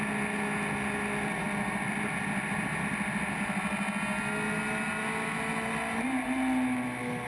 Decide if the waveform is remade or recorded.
recorded